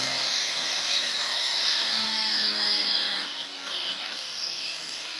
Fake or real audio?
fake